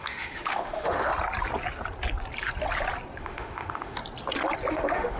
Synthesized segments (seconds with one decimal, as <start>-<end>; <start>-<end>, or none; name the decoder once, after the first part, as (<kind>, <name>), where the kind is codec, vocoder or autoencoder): 0.0-1.1 (autoencoder, DAC-VAE); 3.2-4.0; 4.7-5.2